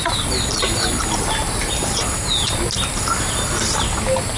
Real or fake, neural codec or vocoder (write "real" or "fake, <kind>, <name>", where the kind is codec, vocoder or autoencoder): real